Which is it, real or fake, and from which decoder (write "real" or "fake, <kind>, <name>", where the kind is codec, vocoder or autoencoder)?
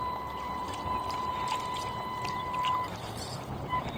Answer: fake, vocoder, BigVGAN v2